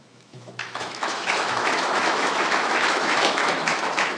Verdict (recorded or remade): remade